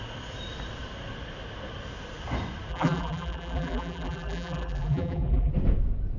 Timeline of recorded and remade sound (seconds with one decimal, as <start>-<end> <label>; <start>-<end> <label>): 0.0-2.7 recorded; 2.7-5.5 remade; 5.5-6.2 recorded